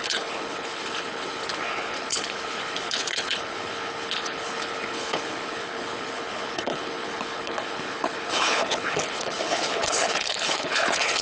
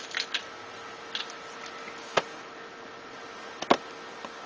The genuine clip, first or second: second